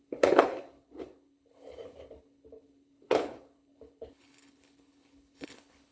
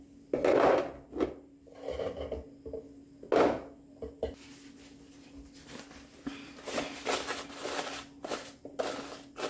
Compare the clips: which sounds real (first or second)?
second